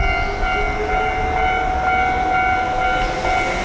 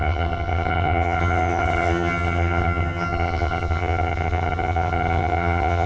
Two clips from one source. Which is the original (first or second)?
first